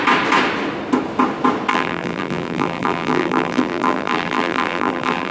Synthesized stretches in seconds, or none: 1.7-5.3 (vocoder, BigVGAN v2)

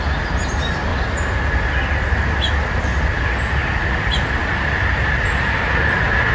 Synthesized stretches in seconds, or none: none

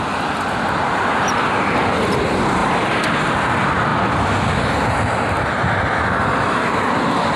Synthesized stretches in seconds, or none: none

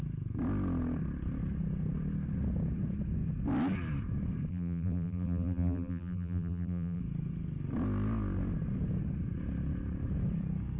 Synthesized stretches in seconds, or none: 4.5-7.0 (vocoder, BigVGAN v2)

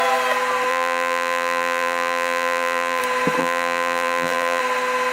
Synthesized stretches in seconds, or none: 0.7-3.0 (vocoder, BigVGAN v2); 3.4-4.6

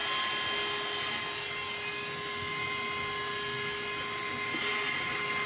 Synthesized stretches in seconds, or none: none

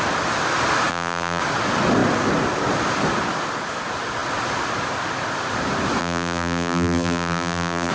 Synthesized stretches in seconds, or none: 0.9-1.4 (vocoder, BigVGAN v2); 6.0-7.9

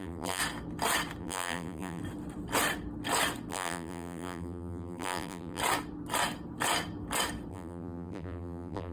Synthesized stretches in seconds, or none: 0.0-0.4 (vocoder, BigVGAN v2); 1.2-2.0; 3.5-5.6; 7.5-8.9